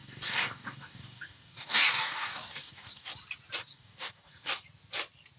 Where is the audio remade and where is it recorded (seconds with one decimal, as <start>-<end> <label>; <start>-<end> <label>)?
0.0-3.1 remade; 3.1-3.6 recorded; 3.6-4.6 remade; 4.6-5.4 recorded